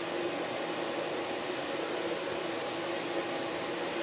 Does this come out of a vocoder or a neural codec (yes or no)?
no